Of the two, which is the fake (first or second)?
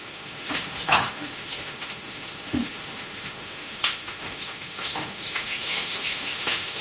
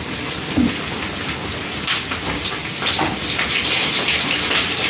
first